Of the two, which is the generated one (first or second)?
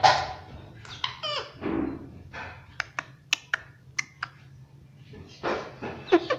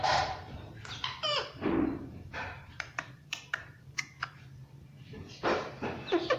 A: second